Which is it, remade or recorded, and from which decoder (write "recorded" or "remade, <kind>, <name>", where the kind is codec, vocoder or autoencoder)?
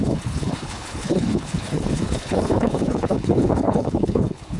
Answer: remade, codec, HILCodec